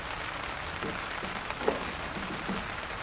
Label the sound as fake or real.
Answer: real